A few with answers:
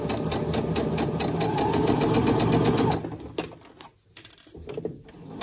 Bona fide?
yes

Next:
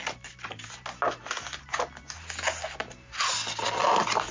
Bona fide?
yes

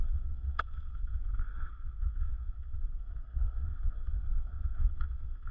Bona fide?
no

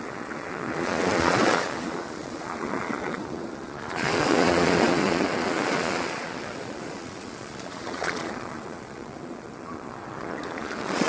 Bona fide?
no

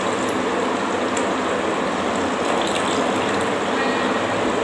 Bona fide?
yes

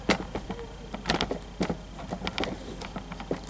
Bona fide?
yes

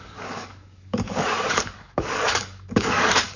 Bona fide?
no